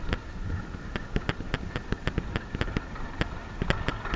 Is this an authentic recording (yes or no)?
yes